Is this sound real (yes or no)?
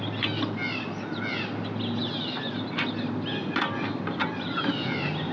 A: yes